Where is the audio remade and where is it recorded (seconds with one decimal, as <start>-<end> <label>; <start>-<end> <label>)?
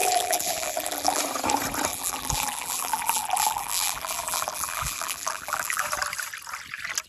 0.0-1.2 remade; 1.2-1.9 recorded; 1.9-5.8 remade; 5.8-7.1 recorded